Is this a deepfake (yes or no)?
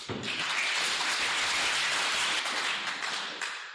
no